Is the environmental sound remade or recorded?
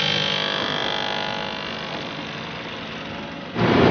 recorded